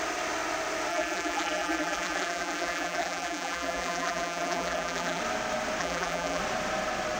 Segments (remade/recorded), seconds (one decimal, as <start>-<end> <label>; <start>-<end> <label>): 0.0-0.9 recorded; 0.9-5.2 remade; 5.2-5.8 recorded; 5.8-6.4 remade; 6.4-7.2 recorded